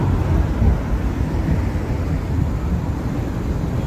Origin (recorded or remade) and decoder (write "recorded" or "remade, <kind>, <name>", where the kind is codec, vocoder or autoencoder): recorded